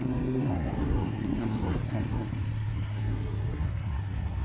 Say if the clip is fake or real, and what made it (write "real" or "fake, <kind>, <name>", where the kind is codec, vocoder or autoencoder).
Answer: fake, codec, SNAC